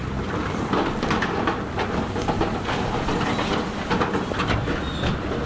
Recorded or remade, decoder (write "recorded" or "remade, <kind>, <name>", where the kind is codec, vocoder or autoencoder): recorded